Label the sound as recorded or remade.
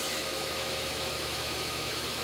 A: remade